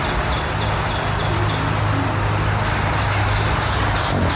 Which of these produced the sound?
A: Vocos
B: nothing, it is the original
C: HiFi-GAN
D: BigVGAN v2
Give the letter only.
B